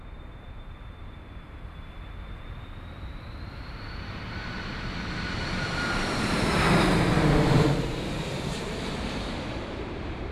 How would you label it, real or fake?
fake